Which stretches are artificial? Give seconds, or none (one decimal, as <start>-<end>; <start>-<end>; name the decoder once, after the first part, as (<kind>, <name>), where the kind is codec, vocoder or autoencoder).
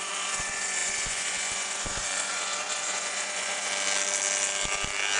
0.0-3.7 (vocoder, Vocos)